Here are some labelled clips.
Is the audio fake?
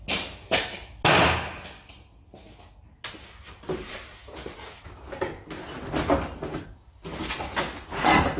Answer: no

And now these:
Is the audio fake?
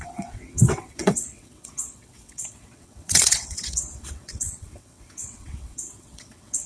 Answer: yes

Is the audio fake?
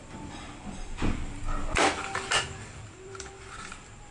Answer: yes